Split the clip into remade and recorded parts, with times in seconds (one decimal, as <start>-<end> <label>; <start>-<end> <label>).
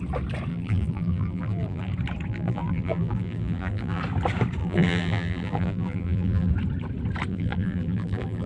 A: 0.0-0.5 recorded; 0.5-1.9 remade; 1.9-2.3 recorded; 2.3-4.0 remade; 4.0-4.6 recorded; 4.6-6.5 remade; 6.5-7.3 recorded; 7.3-8.5 remade